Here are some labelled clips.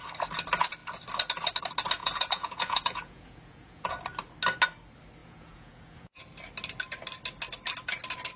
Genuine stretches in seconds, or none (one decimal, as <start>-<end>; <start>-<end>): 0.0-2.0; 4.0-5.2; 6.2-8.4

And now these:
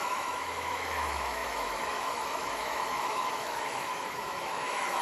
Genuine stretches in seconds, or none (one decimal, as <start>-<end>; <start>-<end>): none

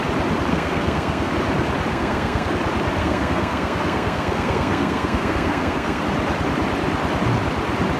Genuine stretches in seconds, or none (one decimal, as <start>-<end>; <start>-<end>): 0.0-0.5; 1.3-1.9; 2.5-3.0; 6.0-8.0

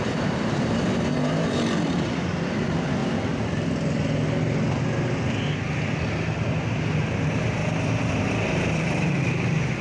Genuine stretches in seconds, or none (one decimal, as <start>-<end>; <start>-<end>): 3.0-7.1; 7.6-8.1

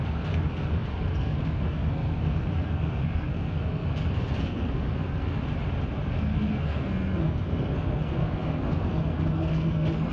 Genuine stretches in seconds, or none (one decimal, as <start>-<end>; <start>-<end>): 5.4-6.1

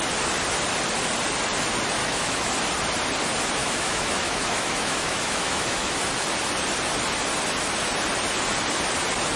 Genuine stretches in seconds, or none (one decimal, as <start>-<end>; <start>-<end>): 0.0-2.0; 2.5-3.6; 6.0-9.4

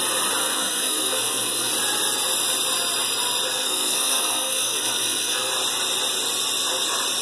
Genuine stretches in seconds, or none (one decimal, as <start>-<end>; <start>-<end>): 0.0-0.4; 1.7-3.5; 5.5-7.2